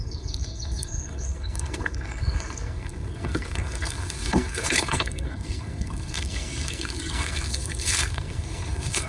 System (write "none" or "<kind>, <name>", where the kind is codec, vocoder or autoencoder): codec, SNAC